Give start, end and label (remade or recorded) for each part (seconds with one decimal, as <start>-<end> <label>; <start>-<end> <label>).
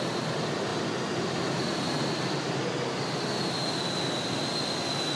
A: 0.0-5.2 recorded